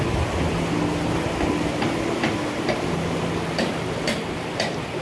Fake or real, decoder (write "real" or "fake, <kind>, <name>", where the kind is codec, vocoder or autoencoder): real